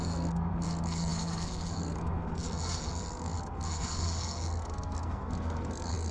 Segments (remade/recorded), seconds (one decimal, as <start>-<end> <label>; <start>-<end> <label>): 0.0-6.1 remade